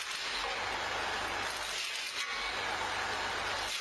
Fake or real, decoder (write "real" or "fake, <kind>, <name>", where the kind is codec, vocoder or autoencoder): real